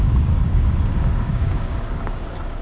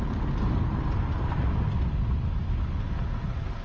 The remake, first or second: first